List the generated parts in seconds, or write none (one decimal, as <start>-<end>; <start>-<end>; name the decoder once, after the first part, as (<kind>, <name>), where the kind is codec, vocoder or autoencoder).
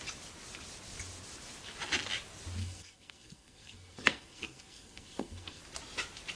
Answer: 2.6-5.6 (codec, SNAC)